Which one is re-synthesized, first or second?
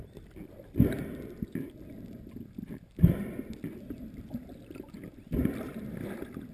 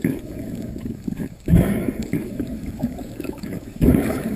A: second